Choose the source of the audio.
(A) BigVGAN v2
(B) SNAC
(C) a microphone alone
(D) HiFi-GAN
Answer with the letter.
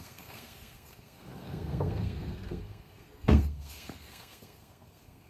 B